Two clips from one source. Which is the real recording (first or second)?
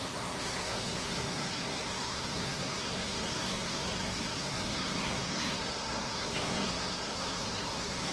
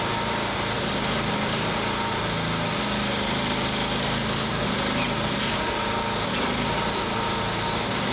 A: second